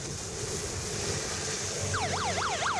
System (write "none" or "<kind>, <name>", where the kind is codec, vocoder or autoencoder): none